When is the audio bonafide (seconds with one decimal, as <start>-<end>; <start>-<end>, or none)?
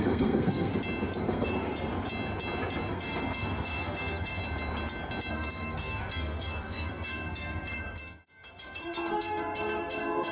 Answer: 0.7-1.2; 1.9-2.9; 4.4-5.3